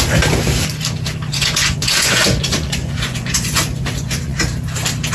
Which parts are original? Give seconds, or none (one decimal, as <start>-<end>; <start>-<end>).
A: 0.0-1.3; 4.4-5.1